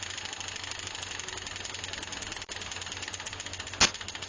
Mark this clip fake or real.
real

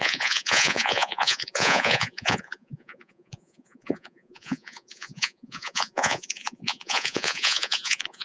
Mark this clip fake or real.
fake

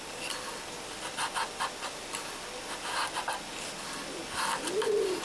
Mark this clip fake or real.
real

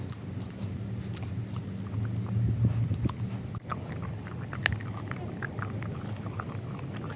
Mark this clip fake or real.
real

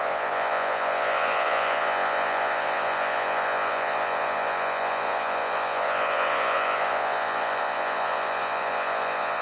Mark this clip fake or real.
fake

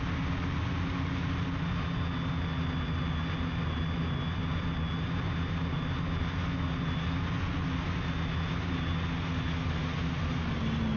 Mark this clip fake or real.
real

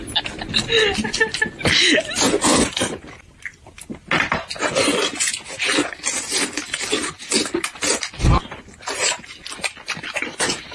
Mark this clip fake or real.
real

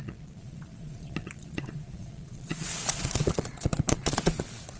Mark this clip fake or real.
fake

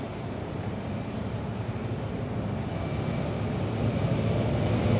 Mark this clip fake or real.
real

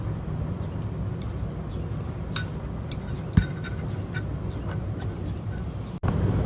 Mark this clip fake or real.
real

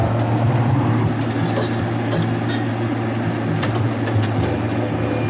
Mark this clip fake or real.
real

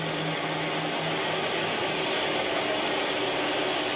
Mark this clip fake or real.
real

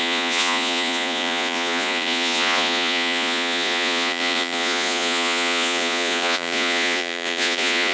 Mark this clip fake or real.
fake